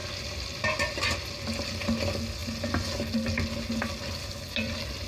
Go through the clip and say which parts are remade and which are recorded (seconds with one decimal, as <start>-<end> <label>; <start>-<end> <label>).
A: 0.0-5.1 recorded